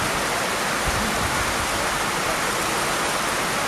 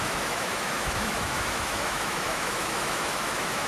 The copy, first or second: second